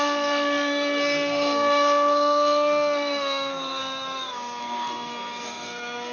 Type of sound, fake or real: fake